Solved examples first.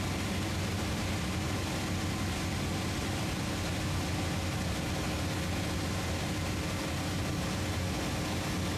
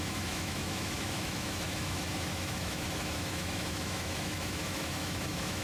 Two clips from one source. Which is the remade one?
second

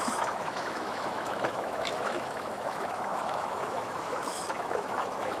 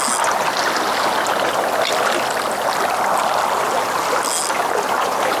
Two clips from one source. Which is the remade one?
first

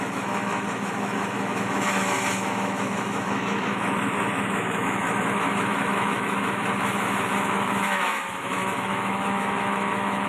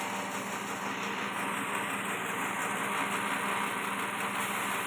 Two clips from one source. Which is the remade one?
first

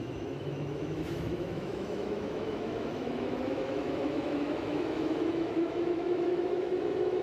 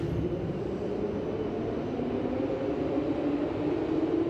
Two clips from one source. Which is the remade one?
first